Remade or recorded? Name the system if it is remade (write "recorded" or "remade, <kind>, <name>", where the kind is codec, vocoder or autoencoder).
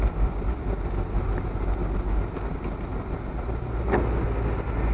recorded